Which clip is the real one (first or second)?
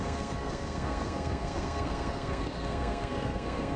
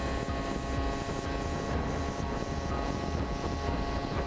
second